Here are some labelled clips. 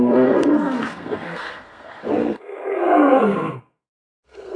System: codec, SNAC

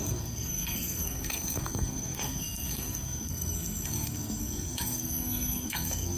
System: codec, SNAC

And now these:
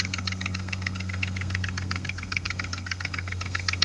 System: codec, SNAC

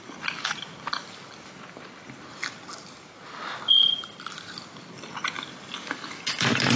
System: none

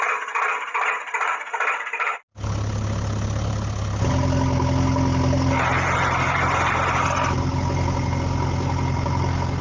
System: none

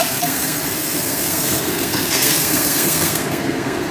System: codec, SNAC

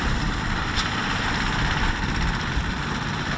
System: none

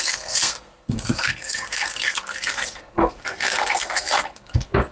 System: codec, SNAC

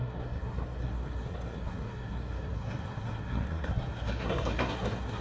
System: codec, SNAC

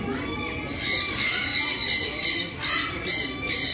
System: none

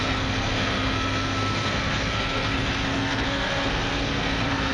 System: codec, SNAC